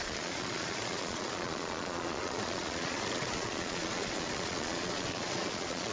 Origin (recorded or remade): remade